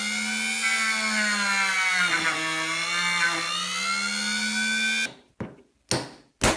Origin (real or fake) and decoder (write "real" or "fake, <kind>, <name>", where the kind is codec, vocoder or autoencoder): real